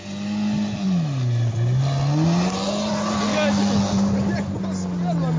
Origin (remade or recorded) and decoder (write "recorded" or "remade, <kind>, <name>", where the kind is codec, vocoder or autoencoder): recorded